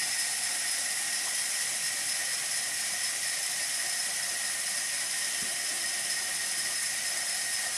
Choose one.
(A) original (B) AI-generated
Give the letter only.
A